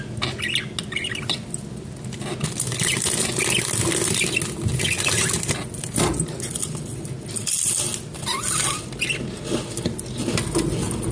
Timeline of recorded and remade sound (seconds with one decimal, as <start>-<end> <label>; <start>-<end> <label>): 0.0-11.1 recorded